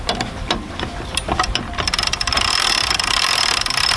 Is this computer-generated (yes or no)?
no